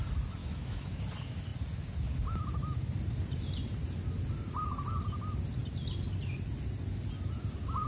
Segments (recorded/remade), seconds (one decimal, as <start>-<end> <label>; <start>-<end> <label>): 0.0-0.4 recorded; 0.4-1.0 remade; 1.0-7.9 recorded